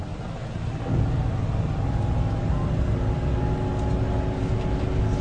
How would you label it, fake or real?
real